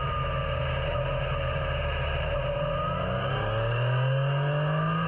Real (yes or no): yes